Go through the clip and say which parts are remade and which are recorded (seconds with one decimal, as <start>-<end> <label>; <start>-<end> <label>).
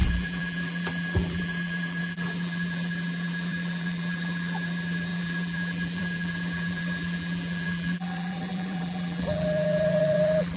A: 0.0-10.6 remade